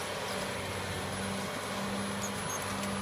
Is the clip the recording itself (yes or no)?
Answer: yes